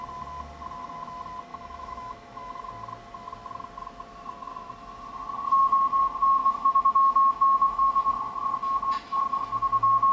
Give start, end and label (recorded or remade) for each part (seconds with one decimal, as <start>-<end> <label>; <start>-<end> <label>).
0.0-1.5 recorded; 1.5-2.7 remade; 2.7-6.4 recorded; 6.4-7.8 remade; 7.8-10.1 recorded